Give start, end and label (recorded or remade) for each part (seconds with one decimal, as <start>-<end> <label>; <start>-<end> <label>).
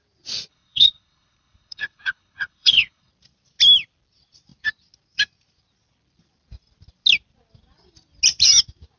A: 0.0-0.5 recorded; 0.5-3.1 remade; 3.1-9.0 recorded